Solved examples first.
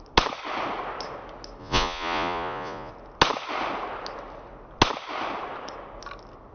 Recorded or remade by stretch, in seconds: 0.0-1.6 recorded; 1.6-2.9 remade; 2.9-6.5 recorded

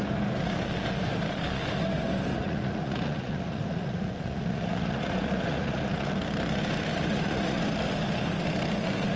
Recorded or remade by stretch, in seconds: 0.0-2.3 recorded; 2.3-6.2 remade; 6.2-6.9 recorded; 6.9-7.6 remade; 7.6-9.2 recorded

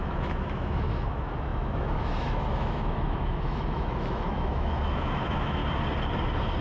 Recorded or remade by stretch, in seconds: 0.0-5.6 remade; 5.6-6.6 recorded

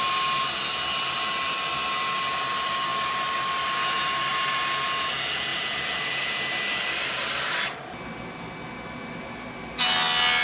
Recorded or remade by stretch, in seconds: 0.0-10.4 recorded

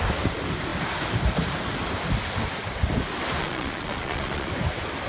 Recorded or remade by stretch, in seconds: 0.0-3.4 recorded; 3.4-4.5 remade; 4.5-5.1 recorded